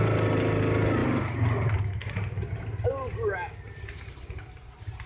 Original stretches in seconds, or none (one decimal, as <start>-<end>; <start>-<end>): 0.0-5.1